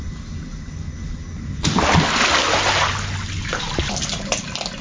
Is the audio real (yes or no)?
yes